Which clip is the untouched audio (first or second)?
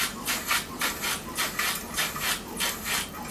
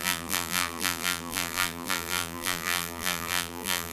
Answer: first